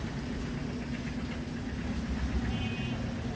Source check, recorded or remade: recorded